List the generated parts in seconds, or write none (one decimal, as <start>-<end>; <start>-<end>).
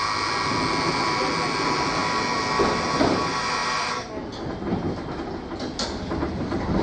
none